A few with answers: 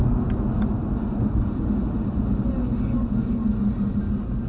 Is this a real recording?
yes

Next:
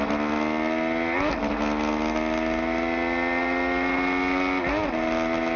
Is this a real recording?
yes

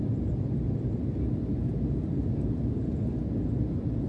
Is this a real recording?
yes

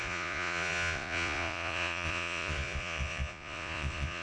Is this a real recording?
no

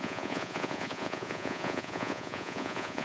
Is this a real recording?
no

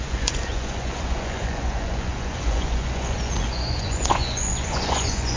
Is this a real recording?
no